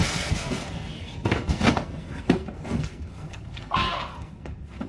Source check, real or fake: fake